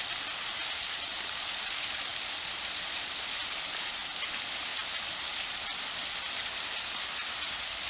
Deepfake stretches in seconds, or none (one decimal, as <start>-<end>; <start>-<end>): none